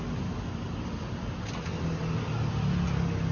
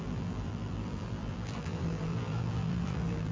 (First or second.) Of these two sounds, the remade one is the second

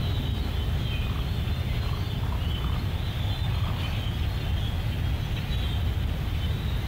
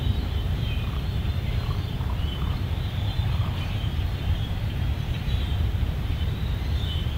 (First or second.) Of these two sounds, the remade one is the second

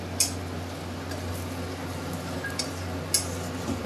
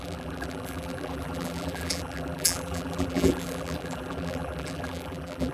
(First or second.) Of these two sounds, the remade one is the second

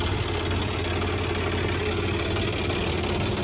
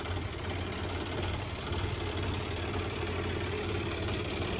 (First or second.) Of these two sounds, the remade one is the second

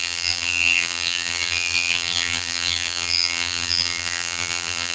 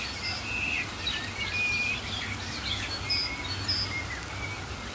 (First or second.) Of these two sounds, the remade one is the first